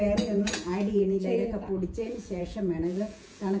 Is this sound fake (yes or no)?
yes